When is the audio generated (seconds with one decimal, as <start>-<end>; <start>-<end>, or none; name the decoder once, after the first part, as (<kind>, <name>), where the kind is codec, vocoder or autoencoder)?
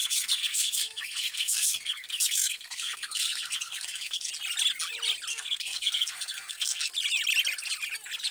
0.0-4.3 (codec, SNAC); 5.3-6.9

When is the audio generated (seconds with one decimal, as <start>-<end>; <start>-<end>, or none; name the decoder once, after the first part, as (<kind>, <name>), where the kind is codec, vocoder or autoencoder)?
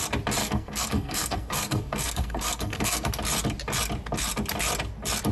0.4-3.1 (codec, SNAC)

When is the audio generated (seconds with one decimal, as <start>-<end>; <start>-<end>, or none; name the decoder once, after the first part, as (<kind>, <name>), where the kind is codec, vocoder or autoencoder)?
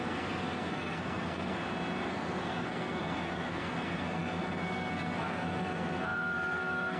0.0-1.6 (codec, SNAC); 2.1-7.0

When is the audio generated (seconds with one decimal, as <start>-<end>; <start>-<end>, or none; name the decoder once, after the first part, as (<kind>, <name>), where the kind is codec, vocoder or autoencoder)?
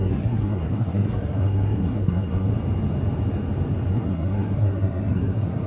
0.0-2.5 (codec, SNAC); 3.9-5.7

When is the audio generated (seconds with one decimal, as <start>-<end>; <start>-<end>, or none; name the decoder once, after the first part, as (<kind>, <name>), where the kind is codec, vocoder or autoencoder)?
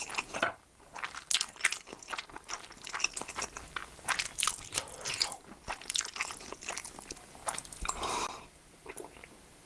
none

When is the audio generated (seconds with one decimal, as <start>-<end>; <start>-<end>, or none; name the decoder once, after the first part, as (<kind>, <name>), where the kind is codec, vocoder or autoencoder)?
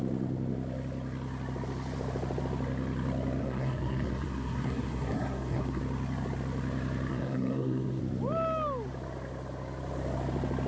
3.4-5.8 (codec, SNAC); 7.1-8.0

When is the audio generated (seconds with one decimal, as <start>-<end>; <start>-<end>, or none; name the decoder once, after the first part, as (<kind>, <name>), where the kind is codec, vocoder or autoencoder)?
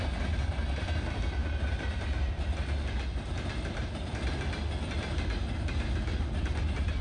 none